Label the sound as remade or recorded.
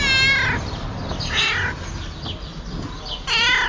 recorded